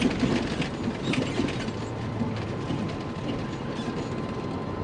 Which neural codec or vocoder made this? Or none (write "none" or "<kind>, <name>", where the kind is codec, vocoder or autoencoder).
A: none